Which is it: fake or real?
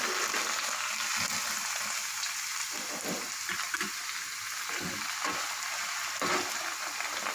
real